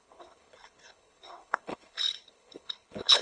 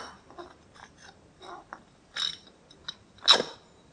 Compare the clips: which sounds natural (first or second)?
second